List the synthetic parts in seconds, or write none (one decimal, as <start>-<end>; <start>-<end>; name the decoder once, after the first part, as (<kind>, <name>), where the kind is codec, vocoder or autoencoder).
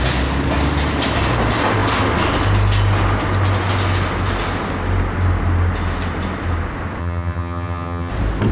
7.0-8.1 (vocoder, HiFi-GAN)